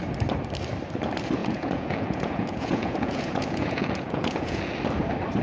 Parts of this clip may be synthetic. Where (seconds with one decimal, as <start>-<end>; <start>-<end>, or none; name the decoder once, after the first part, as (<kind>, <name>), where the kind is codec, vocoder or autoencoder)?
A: 1.4-4.6 (vocoder, Vocos)